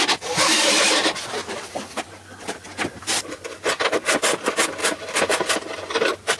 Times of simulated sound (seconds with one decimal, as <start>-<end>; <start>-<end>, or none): 1.4-2.0